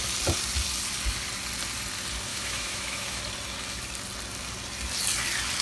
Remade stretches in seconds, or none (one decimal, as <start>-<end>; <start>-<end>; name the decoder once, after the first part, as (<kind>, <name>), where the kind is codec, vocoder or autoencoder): 2.3-3.2 (autoencoder, DAC-VAE)